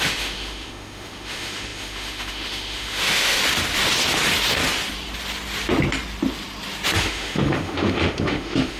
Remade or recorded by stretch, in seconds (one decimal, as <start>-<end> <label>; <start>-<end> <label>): 0.0-3.4 remade; 3.4-7.0 recorded; 7.0-8.8 remade